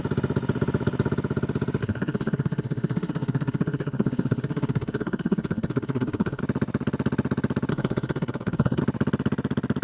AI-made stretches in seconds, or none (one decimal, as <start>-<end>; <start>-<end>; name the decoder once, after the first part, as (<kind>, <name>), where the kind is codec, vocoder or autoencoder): 1.8-6.4 (codec, SNAC); 7.7-8.8